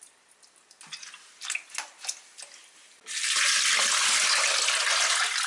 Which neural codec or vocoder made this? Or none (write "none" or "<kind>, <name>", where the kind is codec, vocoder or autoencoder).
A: none